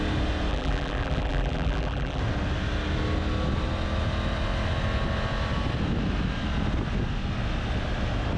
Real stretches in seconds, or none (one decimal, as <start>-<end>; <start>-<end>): 0.0-0.5; 2.2-8.4